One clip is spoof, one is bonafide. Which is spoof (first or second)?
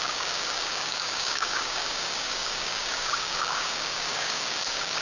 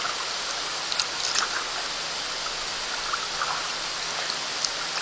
first